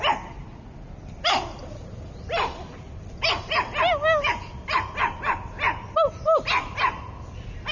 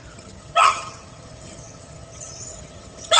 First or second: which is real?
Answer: first